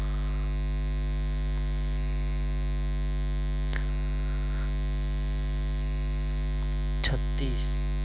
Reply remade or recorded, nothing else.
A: recorded